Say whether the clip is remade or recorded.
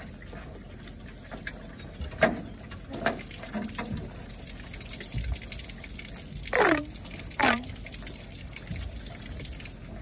recorded